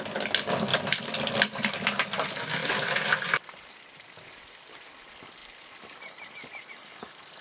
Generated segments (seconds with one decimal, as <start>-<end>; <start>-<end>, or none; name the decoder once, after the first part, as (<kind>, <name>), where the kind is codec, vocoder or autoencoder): 0.7-1.3 (vocoder, BigVGAN v2); 2.6-3.8; 5.4-6.7